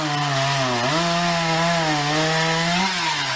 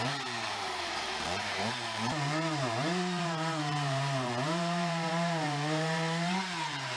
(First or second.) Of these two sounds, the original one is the first